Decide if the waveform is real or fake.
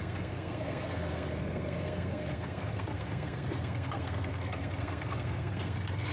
fake